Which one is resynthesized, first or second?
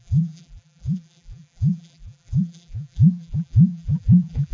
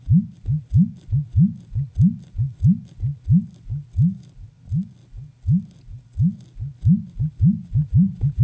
first